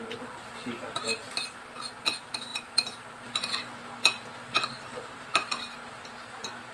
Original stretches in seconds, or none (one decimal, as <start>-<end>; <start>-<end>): 0.0-6.7